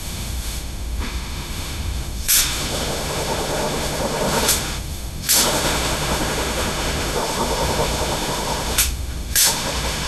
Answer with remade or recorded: remade